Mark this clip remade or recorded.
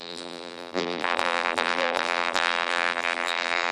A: remade